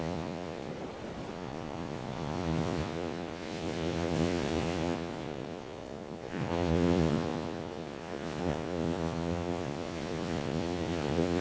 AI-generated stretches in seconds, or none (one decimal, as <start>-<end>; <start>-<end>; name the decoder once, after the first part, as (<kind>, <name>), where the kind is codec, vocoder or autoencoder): 0.0-0.7 (vocoder, Vocos); 1.3-11.4